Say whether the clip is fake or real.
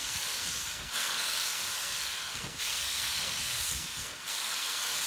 fake